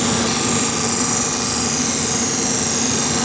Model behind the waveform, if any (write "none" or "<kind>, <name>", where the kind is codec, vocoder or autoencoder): none